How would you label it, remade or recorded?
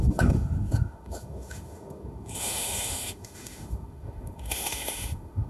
remade